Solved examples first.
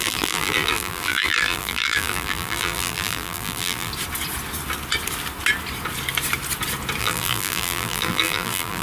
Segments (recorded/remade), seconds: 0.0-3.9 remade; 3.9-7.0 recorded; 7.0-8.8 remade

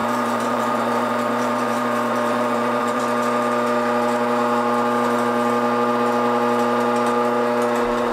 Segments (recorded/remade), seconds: 0.0-3.0 remade; 3.0-8.1 recorded

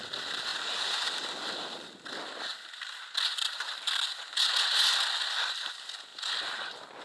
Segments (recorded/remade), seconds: 0.0-7.0 recorded